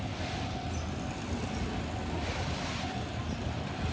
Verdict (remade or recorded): recorded